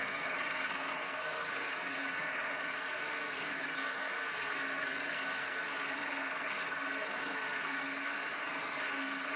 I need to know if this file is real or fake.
fake